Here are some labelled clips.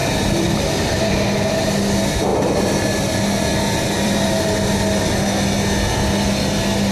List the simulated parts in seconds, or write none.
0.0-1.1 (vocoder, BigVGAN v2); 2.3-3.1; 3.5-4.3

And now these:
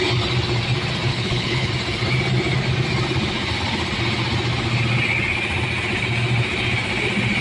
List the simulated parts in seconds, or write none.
1.1-1.7 (codec, HILCodec)

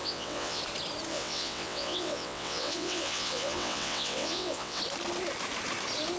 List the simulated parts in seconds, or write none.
0.0-0.6 (vocoder, WaveNeXt); 1.1-4.8